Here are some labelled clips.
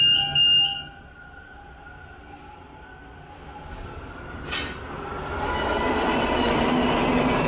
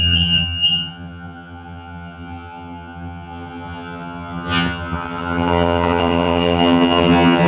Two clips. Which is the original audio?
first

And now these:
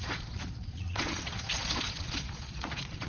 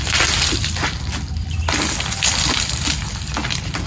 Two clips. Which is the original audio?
second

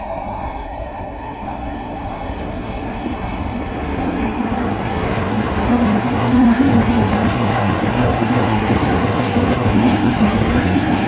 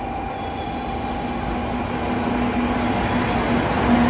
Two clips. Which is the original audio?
second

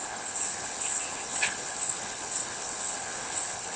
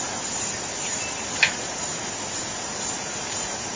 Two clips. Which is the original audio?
second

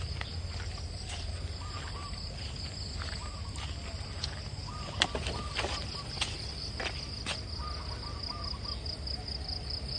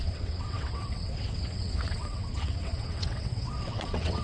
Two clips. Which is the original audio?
first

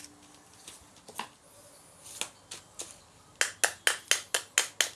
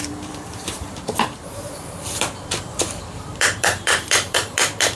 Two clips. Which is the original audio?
first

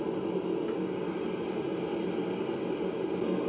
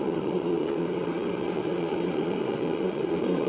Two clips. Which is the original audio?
first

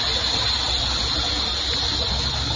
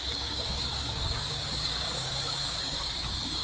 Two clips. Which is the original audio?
first